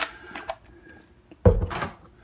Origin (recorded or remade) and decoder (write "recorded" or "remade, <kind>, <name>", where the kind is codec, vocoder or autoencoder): recorded